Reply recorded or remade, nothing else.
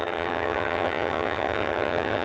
remade